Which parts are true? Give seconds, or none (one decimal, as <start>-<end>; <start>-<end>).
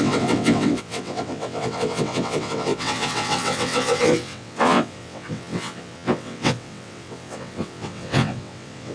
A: none